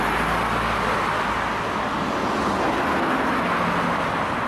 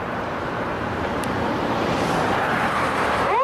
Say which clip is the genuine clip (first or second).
first